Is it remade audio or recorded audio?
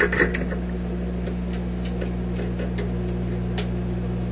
recorded